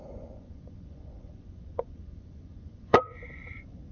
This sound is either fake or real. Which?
fake